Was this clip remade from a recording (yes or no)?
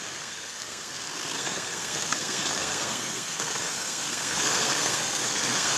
yes